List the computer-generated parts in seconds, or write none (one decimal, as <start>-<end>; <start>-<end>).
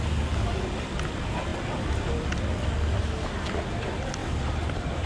4.2-5.1